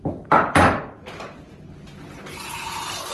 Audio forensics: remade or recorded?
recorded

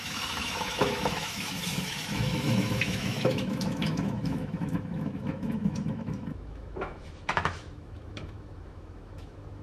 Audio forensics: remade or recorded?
remade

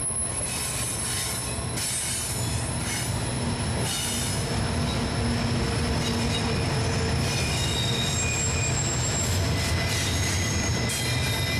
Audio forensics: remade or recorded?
recorded